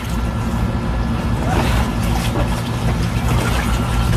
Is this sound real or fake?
real